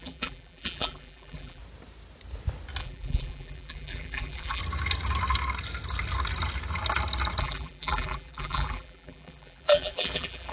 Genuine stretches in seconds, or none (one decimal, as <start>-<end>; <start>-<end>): 1.6-2.8; 4.6-7.4